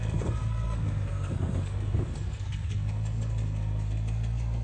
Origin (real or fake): fake